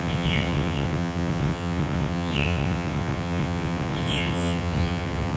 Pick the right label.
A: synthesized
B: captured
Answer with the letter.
A